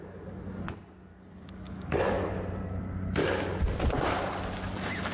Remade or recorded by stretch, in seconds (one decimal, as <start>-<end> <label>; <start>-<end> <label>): 0.0-1.1 recorded; 1.1-2.3 remade; 2.3-3.2 recorded; 3.2-3.8 remade; 3.8-5.1 recorded